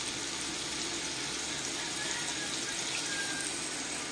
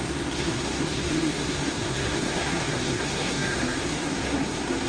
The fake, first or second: second